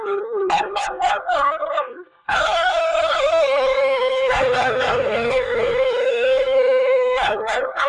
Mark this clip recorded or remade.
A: remade